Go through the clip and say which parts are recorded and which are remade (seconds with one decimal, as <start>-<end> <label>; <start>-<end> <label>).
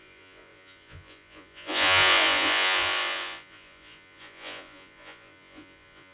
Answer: 0.0-6.1 remade